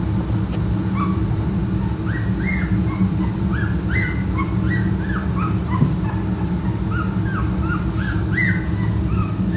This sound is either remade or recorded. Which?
recorded